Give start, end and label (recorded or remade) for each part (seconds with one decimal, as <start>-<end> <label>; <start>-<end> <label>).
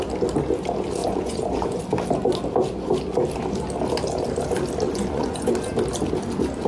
0.0-1.0 recorded; 1.0-1.8 remade; 1.8-4.9 recorded; 4.9-5.5 remade; 5.5-6.7 recorded